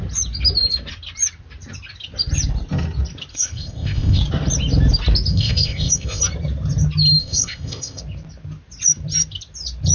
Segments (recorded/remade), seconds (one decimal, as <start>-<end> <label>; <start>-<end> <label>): 0.0-3.3 recorded; 3.3-4.2 remade; 4.2-5.3 recorded; 5.3-6.2 remade; 6.2-7.2 recorded; 7.2-8.0 remade; 8.0-9.9 recorded